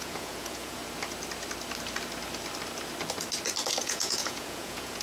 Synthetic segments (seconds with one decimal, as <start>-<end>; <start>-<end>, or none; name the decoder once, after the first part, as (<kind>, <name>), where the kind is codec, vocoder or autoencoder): 0.0-0.8 (vocoder, Vocos); 3.8-5.0